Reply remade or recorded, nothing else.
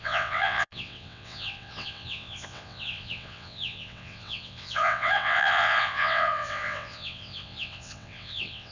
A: remade